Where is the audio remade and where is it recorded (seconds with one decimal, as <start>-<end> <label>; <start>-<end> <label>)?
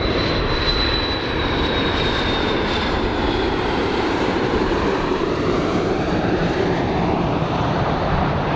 0.0-0.7 remade; 0.7-1.4 recorded; 1.4-8.6 remade